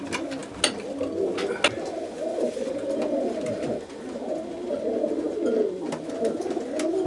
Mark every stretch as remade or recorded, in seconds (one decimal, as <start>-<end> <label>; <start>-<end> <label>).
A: 0.0-7.1 recorded